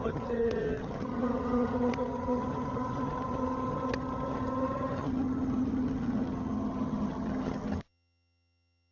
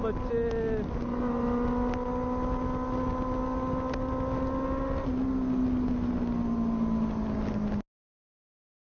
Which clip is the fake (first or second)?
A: first